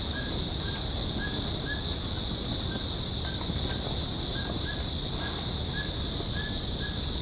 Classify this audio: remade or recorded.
recorded